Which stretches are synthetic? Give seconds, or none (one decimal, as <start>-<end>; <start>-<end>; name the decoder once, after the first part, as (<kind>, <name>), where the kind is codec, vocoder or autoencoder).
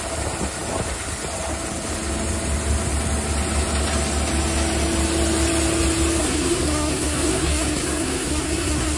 6.2-9.0 (codec, SNAC)